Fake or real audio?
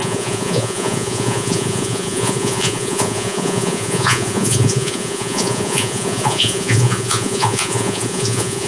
fake